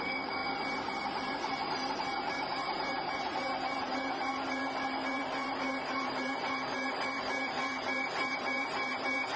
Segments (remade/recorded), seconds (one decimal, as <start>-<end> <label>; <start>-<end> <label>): 0.0-4.2 remade; 4.2-5.1 recorded; 5.1-9.4 remade